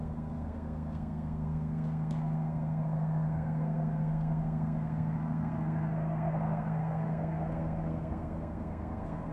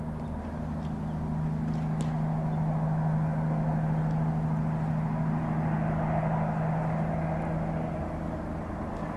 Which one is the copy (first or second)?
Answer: first